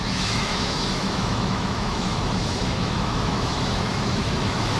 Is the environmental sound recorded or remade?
remade